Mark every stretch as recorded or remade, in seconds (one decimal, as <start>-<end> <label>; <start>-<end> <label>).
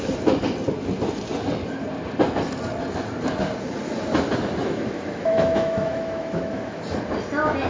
0.0-4.6 recorded; 4.6-6.8 remade; 6.8-7.7 recorded